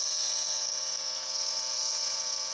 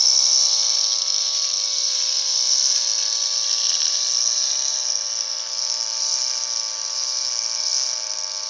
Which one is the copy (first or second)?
first